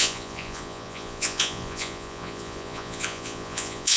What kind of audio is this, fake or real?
fake